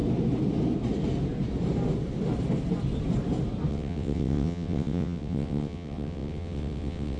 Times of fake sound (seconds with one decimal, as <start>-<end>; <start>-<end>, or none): 3.7-7.2